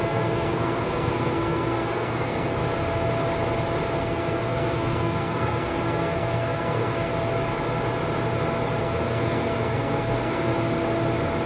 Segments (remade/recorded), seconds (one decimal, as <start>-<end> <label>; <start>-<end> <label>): 0.0-2.6 remade; 2.6-4.0 recorded; 4.0-7.1 remade; 7.1-8.8 recorded; 8.8-10.5 remade; 10.5-11.5 recorded